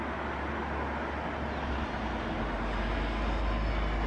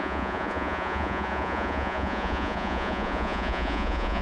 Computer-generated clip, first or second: second